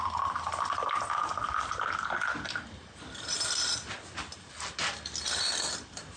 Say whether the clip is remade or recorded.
recorded